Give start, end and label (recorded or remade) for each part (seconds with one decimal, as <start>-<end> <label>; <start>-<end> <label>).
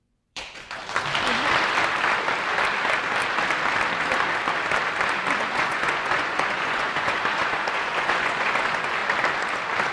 0.0-0.8 remade; 0.8-5.4 recorded; 5.4-9.0 remade; 9.0-9.9 recorded